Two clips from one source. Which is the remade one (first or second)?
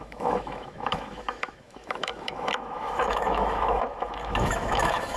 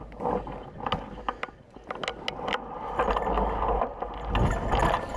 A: first